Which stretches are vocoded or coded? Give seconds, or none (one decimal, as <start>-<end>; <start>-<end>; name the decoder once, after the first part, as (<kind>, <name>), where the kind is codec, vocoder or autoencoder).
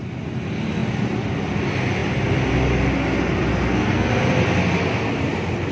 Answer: 3.5-4.1 (codec, SNAC)